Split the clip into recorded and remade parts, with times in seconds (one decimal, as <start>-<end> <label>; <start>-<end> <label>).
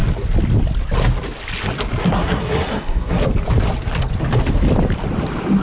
0.0-2.0 recorded; 2.0-3.2 remade; 3.2-5.6 recorded